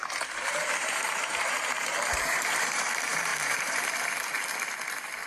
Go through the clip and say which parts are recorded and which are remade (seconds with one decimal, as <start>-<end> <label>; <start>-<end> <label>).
0.0-2.8 remade; 2.8-3.3 recorded; 3.3-3.9 remade; 3.9-5.3 recorded